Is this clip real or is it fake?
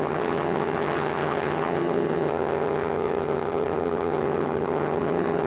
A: fake